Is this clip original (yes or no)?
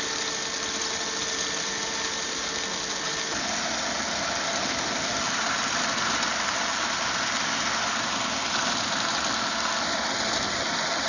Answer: yes